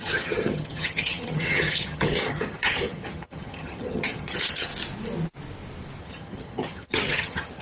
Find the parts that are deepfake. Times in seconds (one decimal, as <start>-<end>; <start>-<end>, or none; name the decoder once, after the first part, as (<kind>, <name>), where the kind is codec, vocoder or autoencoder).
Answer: 0.0-4.7 (vocoder, HiFi-GAN); 6.0-7.6